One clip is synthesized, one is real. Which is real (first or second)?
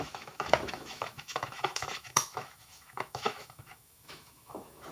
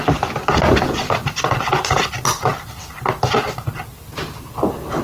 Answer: second